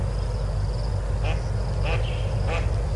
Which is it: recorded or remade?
recorded